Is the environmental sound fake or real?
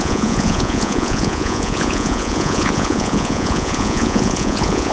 fake